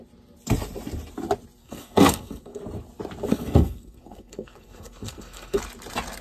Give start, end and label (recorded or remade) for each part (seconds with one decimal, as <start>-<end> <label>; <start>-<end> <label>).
0.0-1.6 recorded; 1.6-2.6 remade; 2.6-3.3 recorded; 3.3-5.6 remade; 5.6-6.2 recorded